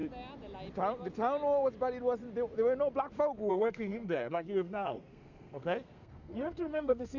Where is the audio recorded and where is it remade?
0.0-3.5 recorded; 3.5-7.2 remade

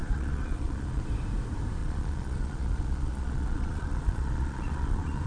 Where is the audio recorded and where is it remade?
0.0-1.0 remade; 1.0-1.8 recorded; 1.8-5.3 remade

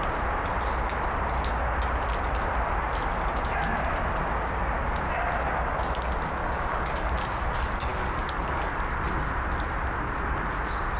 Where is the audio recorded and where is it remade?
0.0-6.4 recorded; 6.4-7.1 remade; 7.1-7.9 recorded; 7.9-8.7 remade; 8.7-11.0 recorded